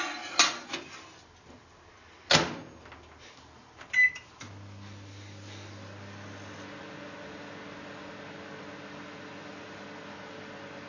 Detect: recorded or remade recorded